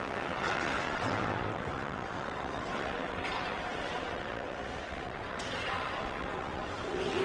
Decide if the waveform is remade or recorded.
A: remade